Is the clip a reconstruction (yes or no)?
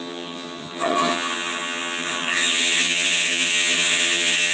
yes